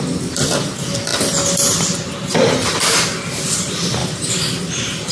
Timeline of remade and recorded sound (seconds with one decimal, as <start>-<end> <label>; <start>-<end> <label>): 0.0-4.0 recorded; 4.0-5.1 remade